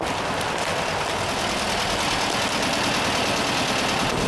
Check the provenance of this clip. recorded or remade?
recorded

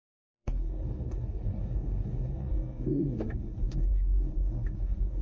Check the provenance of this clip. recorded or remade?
remade